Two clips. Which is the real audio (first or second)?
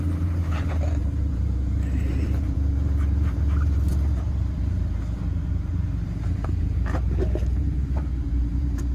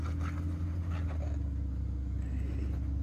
second